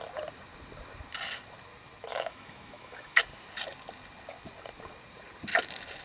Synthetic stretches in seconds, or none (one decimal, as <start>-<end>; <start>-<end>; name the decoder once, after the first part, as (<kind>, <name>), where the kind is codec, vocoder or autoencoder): 2.1-3.2 (autoencoder, DAC-VAE)